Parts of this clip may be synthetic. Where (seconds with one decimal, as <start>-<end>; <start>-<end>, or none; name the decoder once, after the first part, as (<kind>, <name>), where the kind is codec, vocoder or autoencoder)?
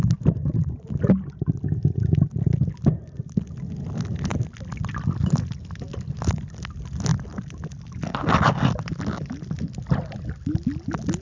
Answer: none